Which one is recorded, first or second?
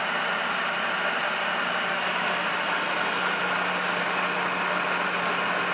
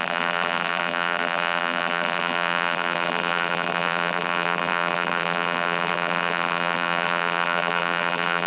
first